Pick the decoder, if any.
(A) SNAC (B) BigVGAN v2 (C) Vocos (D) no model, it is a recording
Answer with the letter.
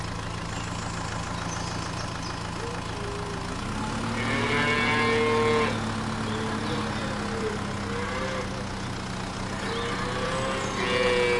D